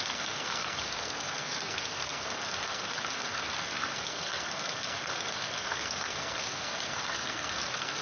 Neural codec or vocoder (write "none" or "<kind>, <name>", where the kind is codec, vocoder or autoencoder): codec, SNAC